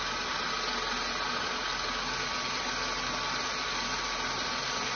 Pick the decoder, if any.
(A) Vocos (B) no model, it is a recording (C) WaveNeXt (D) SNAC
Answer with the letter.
B